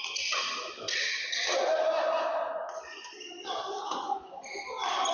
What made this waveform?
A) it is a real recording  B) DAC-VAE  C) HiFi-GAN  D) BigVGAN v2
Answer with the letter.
A